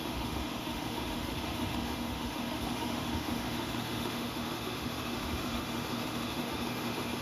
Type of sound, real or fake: fake